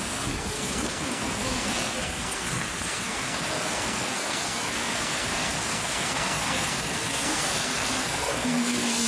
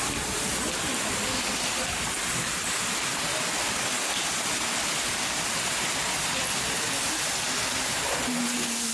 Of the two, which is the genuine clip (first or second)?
second